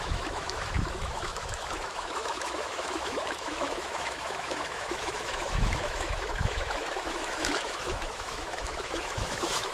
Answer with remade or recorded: remade